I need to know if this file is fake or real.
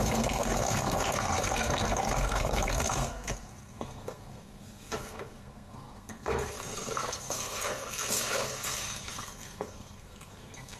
fake